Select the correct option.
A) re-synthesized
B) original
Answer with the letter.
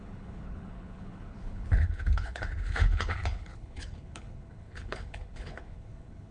A